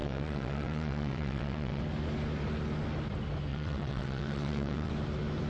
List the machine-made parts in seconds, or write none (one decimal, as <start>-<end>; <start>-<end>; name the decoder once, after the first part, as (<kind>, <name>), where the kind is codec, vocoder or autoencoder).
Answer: 0.0-1.8 (vocoder, WaveNeXt); 3.5-4.9